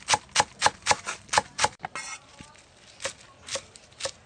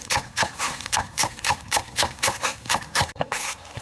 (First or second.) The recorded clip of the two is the first